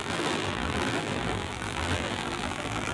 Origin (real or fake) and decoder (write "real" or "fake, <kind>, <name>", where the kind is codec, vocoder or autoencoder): fake, vocoder, BigVGAN v2